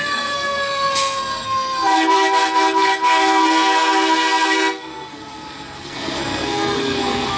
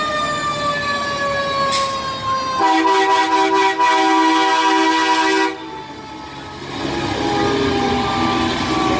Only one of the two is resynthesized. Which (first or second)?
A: first